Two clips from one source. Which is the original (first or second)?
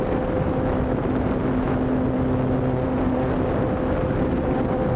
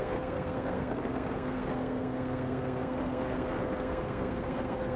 first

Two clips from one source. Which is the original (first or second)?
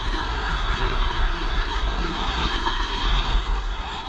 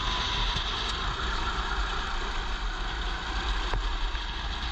second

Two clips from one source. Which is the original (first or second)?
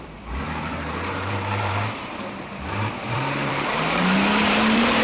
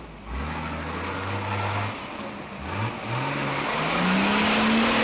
second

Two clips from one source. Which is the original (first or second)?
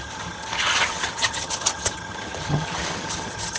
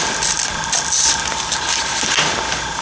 second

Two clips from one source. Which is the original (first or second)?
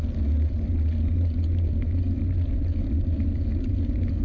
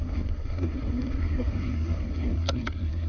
first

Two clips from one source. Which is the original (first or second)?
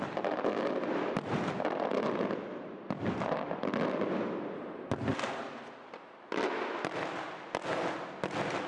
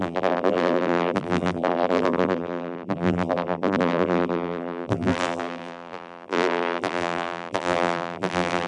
first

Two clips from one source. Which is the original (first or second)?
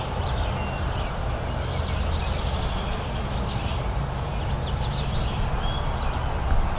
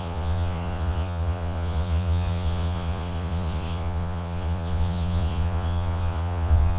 first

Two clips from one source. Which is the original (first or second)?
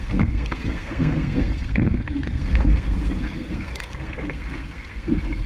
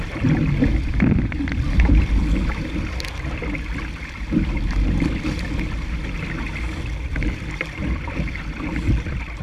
second